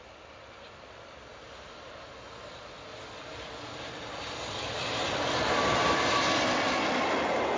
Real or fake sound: real